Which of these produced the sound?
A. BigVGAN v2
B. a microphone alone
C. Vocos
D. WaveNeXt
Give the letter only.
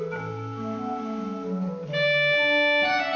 B